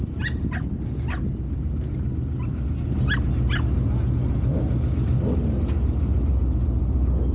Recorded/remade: recorded